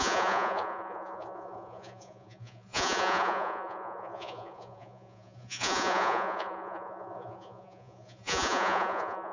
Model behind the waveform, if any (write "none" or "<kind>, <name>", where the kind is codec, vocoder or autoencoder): vocoder, Vocos